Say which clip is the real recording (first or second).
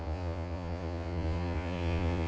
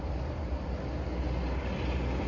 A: second